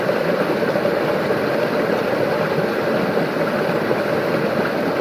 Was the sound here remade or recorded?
recorded